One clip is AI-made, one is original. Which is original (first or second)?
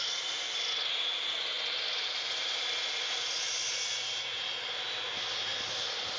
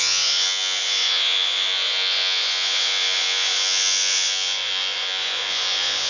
first